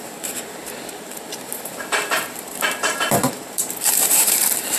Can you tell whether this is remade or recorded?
remade